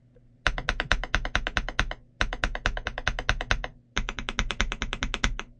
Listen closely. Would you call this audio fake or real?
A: real